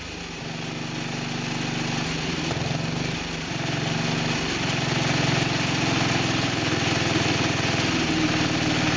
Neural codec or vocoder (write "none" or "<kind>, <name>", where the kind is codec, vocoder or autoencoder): none